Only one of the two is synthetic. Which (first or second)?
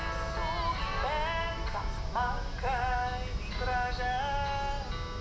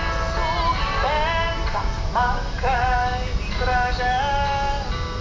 second